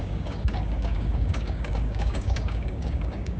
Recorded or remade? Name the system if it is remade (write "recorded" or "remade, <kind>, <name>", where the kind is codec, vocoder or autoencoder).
remade, codec, DAC